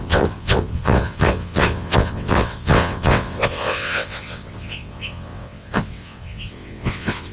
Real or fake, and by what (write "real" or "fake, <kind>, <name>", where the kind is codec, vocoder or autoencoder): fake, vocoder, WaveNeXt